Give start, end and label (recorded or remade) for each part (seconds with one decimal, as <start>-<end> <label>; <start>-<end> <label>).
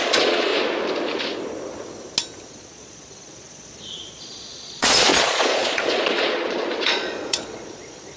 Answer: 0.0-0.5 remade; 0.5-2.5 recorded; 2.5-8.2 remade